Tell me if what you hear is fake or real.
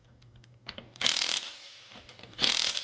fake